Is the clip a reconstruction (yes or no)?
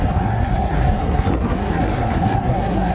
yes